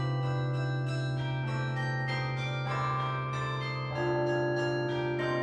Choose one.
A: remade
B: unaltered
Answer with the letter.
B